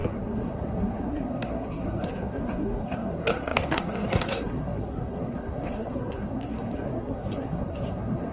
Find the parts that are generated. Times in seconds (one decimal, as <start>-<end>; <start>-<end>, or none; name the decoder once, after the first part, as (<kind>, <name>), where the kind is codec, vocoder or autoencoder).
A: 0.0-8.3 (codec, SNAC)